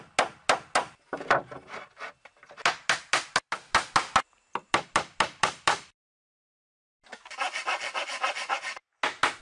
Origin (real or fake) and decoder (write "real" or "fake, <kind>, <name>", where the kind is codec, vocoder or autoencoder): real